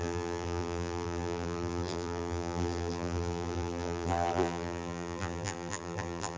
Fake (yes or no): yes